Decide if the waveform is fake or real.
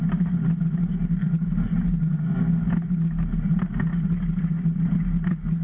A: real